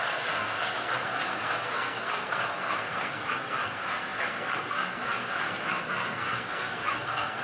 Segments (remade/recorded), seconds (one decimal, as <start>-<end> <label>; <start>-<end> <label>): 0.0-7.4 remade